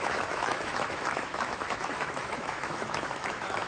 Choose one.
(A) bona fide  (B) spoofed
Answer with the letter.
B